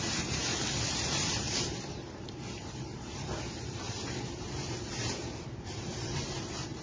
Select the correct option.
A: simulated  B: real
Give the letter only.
A